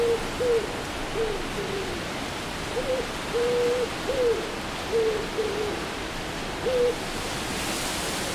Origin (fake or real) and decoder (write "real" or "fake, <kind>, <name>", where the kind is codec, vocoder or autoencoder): real